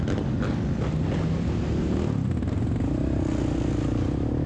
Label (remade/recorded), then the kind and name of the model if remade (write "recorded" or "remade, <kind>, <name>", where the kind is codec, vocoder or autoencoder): recorded